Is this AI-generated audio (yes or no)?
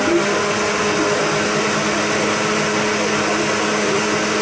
no